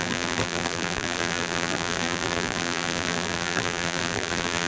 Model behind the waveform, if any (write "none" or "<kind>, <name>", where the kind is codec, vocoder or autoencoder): vocoder, BigVGAN v2